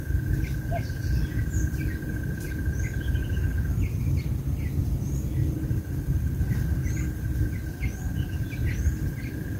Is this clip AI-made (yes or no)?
no